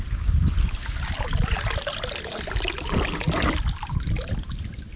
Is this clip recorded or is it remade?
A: remade